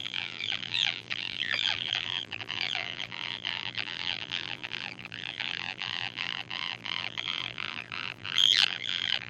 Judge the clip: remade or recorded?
remade